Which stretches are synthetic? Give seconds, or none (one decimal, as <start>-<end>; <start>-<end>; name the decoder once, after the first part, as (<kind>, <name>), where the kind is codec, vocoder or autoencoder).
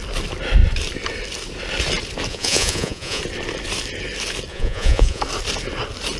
2.3-3.2 (vocoder, Vocos); 4.5-5.2